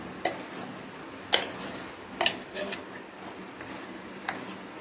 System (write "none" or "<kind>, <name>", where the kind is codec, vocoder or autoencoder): none